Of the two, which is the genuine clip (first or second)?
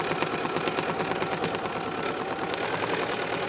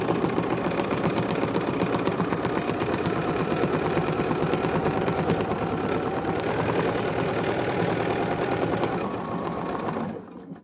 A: first